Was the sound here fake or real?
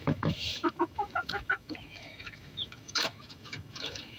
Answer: fake